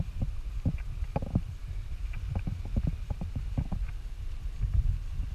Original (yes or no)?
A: yes